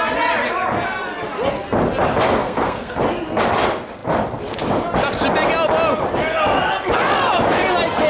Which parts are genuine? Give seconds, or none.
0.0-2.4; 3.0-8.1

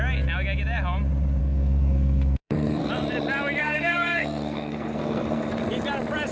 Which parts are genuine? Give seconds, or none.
0.0-1.4; 2.9-3.6; 5.5-6.3

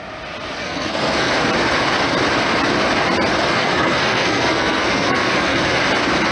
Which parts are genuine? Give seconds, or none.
0.0-0.6; 1.3-3.5; 5.6-6.3

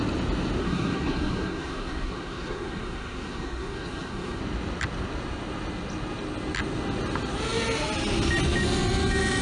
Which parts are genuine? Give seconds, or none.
0.0-0.6; 4.4-9.4

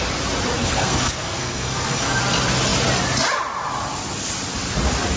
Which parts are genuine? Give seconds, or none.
0.0-0.6; 2.2-5.2

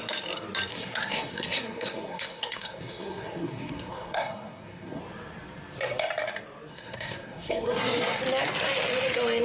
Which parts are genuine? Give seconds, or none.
0.0-0.7; 5.0-6.7; 8.2-9.4